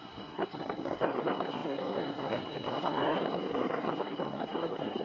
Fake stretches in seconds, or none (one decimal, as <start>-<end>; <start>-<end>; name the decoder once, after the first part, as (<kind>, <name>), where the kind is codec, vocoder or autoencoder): 0.0-5.0 (codec, SNAC)